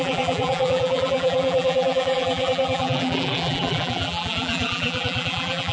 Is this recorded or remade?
remade